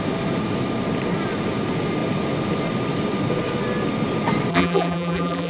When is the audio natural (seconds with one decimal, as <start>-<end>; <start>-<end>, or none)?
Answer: 0.0-4.5